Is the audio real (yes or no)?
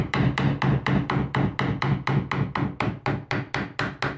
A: yes